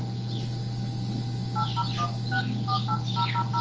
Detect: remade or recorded recorded